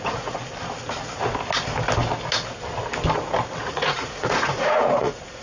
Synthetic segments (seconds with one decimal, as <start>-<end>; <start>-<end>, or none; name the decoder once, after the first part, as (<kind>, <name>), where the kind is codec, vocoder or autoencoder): 0.0-0.4 (vocoder, Vocos); 3.6-5.4